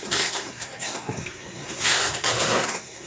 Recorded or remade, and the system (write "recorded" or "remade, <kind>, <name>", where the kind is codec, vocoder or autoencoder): remade, codec, SNAC